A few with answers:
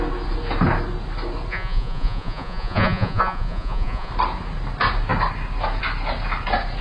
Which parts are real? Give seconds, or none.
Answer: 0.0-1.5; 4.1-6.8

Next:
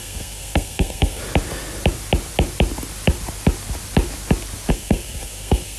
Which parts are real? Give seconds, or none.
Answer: 1.2-4.7

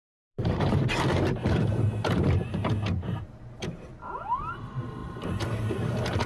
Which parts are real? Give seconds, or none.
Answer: 3.9-4.6

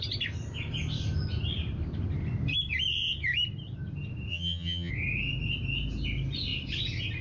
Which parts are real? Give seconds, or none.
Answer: 0.0-4.3; 4.9-7.2

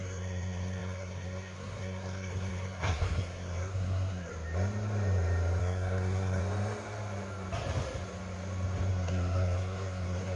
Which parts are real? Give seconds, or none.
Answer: 4.3-5.6; 6.4-8.9

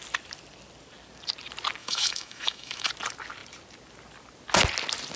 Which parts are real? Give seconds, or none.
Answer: 0.0-1.8; 2.9-5.2